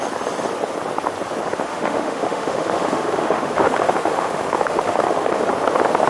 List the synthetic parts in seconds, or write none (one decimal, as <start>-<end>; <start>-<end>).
1.7-5.4